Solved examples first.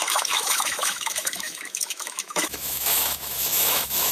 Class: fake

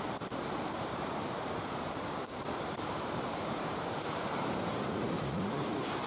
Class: fake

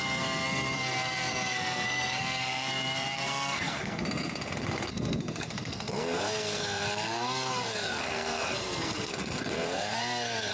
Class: fake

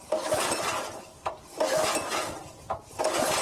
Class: real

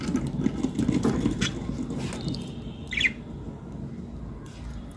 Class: real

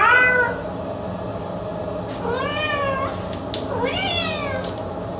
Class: real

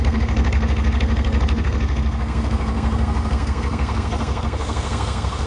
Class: fake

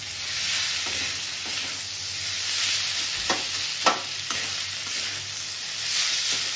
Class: real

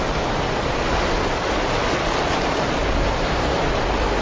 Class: real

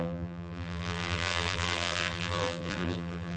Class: fake